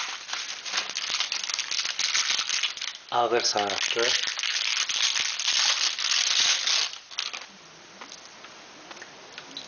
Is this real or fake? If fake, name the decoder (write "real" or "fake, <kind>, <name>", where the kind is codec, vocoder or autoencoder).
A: real